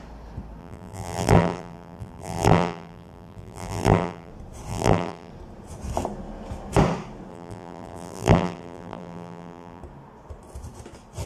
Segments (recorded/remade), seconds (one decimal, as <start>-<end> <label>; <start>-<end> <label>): 0.0-0.6 recorded; 0.6-4.3 remade; 4.3-4.7 recorded; 4.7-5.3 remade; 5.3-7.3 recorded; 7.3-9.8 remade; 9.8-11.3 recorded